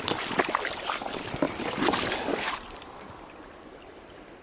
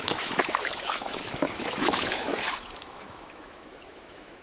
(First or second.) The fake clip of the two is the second